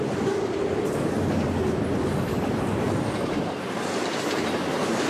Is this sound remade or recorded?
recorded